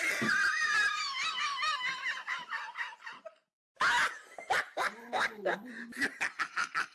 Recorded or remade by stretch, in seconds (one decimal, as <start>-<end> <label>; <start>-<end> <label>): 0.0-5.0 recorded; 5.0-5.7 remade; 5.7-6.9 recorded